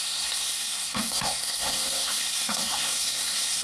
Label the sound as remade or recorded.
remade